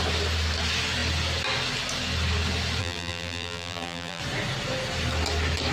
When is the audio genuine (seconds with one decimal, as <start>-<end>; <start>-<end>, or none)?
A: 0.0-2.8; 4.2-5.7